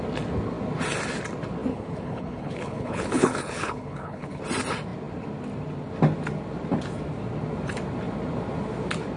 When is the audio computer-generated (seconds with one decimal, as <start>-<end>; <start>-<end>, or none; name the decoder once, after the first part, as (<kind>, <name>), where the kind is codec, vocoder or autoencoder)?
1.7-4.4 (codec, HILCodec)